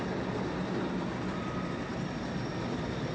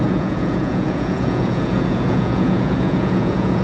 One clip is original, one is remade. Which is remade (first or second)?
second